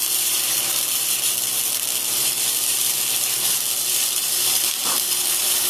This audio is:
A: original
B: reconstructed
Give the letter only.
B